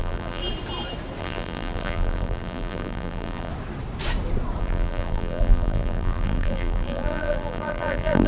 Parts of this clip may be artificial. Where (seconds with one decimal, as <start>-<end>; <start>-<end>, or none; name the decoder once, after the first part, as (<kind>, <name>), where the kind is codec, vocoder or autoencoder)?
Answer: 0.0-0.4 (vocoder, BigVGAN v2); 1.2-3.5; 4.6-8.3

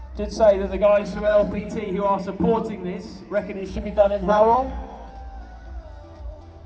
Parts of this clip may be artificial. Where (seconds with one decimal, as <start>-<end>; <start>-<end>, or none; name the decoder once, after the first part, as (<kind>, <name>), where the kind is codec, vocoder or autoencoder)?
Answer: 1.0-1.7 (codec, SNAC); 3.6-5.1

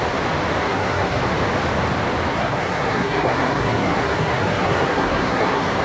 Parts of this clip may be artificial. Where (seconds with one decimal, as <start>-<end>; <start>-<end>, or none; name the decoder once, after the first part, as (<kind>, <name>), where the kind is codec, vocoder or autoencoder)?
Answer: 0.6-1.2 (codec, SNAC); 2.3-5.8